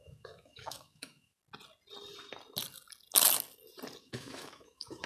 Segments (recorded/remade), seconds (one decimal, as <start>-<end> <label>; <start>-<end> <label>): 0.0-1.4 remade; 1.4-4.0 recorded; 4.0-5.1 remade